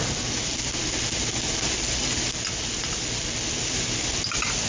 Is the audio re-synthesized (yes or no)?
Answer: no